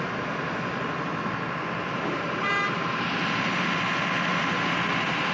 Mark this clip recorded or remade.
recorded